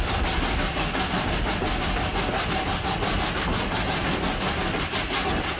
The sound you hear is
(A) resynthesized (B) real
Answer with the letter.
B